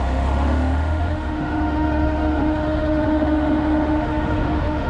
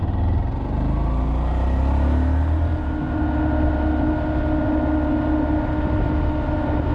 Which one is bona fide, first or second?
second